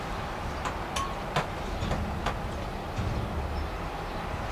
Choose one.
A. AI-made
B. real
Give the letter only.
B